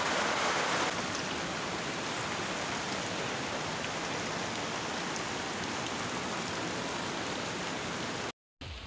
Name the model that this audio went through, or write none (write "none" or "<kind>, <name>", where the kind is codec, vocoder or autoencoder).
none